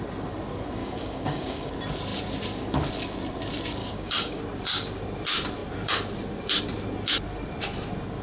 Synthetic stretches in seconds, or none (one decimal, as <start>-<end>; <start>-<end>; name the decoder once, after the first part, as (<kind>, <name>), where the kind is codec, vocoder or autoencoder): 0.8-1.7 (codec, DAC); 3.8-4.4